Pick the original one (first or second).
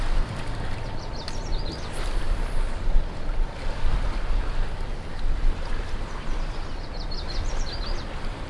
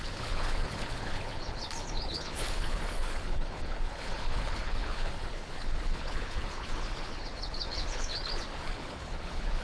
first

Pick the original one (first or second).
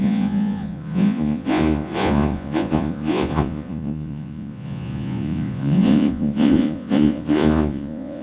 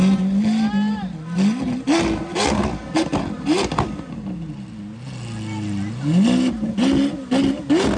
second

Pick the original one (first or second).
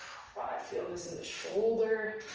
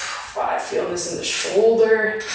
second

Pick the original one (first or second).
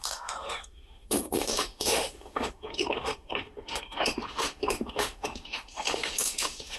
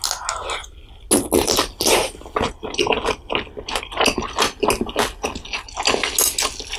second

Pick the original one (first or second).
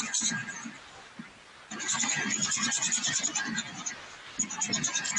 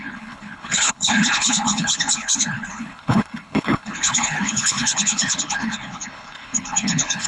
first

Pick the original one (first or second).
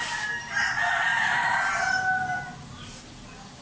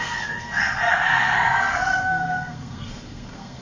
first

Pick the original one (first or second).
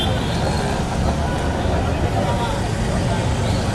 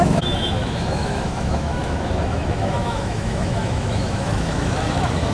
first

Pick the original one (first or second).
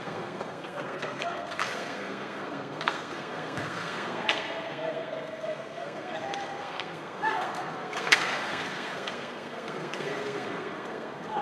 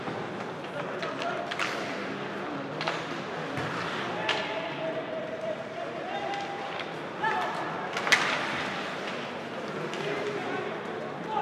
second